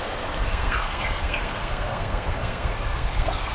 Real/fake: fake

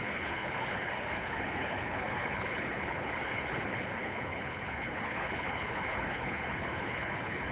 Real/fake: fake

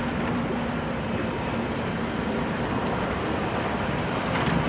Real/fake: fake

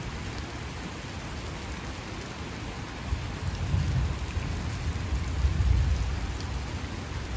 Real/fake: real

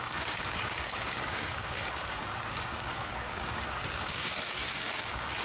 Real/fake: fake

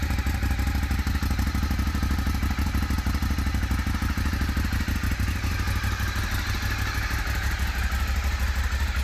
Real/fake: real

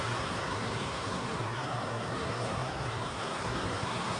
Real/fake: fake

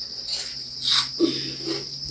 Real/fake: real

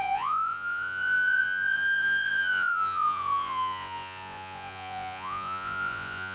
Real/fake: fake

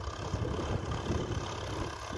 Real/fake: real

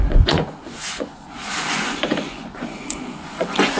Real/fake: fake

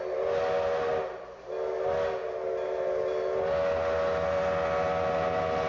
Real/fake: real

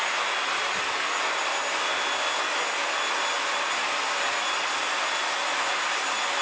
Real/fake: real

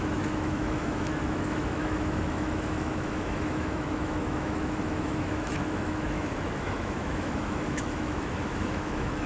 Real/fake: fake